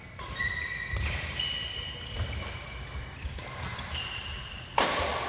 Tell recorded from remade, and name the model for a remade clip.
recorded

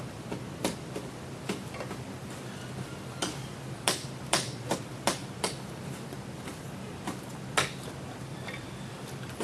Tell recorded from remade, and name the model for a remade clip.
remade, vocoder, BigVGAN v2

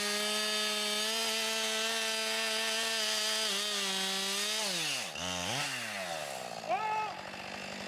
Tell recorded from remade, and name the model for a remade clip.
recorded